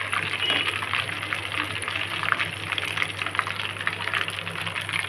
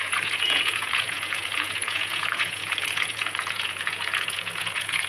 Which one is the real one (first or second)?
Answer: first